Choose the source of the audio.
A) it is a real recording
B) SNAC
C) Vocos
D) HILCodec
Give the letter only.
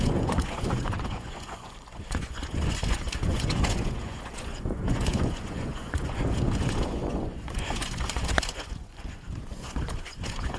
C